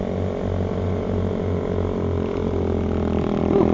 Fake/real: real